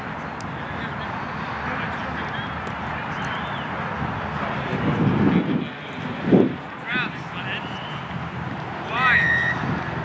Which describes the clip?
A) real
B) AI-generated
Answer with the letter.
A